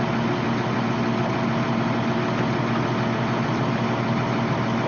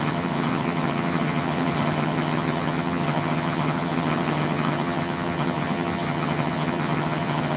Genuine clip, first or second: first